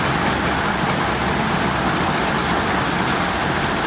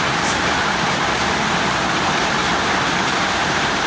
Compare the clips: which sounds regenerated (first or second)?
second